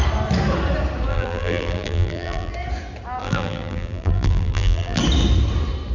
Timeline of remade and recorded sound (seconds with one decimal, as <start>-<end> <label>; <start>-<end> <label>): 0.0-1.1 recorded; 1.1-2.5 remade; 2.5-3.2 recorded; 3.2-5.0 remade; 5.0-5.9 recorded